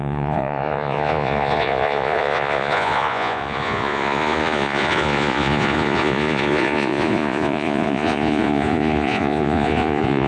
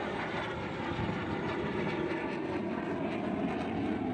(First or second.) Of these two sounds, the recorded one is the second